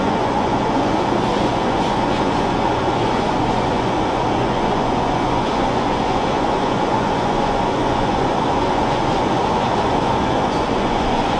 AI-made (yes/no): yes